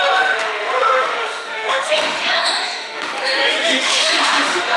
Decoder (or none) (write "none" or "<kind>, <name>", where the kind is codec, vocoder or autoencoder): autoencoder, DAC-VAE